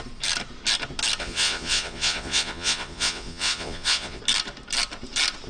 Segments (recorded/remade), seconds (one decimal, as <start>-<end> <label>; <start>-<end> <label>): 0.0-1.2 recorded; 1.2-4.2 remade; 4.2-5.5 recorded